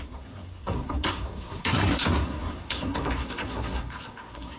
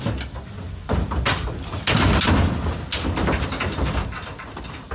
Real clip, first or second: second